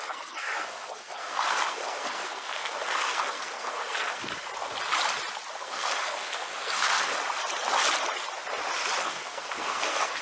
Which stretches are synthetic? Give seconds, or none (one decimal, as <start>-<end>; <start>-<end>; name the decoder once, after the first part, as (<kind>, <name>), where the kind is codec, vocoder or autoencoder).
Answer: 0.0-4.3 (codec, SNAC); 5.6-7.1; 9.0-10.2